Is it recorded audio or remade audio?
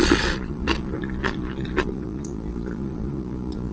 remade